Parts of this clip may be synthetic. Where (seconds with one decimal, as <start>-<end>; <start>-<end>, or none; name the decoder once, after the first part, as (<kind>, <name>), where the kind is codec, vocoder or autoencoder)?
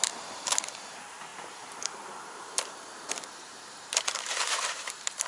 0.0-5.3 (vocoder, BigVGAN v2)